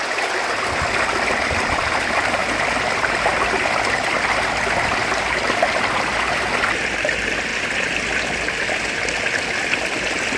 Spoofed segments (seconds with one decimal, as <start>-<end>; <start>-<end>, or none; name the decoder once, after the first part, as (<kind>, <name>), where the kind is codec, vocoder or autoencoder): none